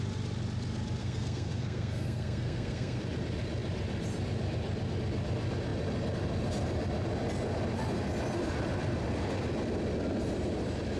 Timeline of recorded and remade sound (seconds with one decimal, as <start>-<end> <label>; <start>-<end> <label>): 0.0-1.0 recorded; 1.0-3.0 remade; 3.0-11.0 recorded